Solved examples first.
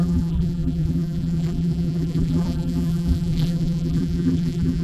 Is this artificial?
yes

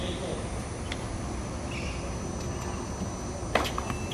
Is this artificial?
no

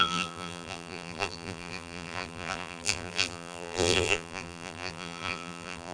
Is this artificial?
yes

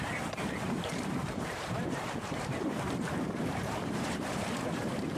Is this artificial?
yes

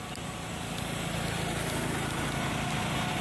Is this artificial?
no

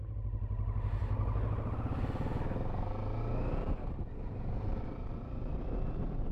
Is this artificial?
no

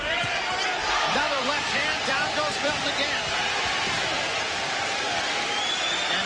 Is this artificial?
yes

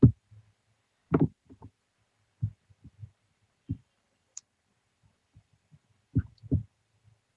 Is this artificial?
yes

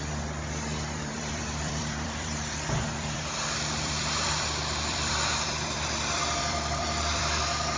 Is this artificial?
yes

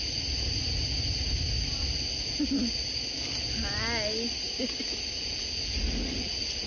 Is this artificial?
no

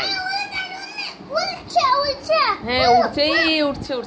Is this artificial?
no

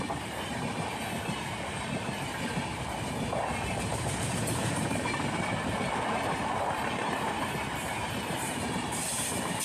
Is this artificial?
yes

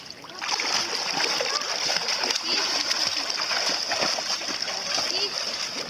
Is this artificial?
no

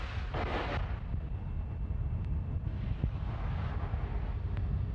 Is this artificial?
no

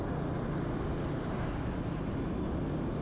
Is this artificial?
no